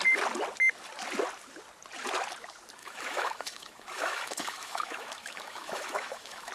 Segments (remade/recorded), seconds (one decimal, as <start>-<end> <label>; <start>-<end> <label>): 0.0-2.8 recorded; 2.8-6.5 remade